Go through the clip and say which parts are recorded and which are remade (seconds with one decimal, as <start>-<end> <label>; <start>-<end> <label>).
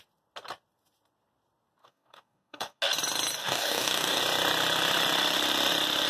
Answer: 0.0-1.8 recorded; 1.8-2.8 remade; 2.8-3.4 recorded; 3.4-4.2 remade; 4.2-6.1 recorded